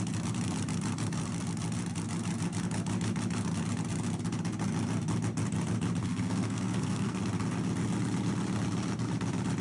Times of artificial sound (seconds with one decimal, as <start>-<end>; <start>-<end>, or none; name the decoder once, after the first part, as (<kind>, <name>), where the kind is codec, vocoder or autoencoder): 6.0-7.2 (codec, SNAC)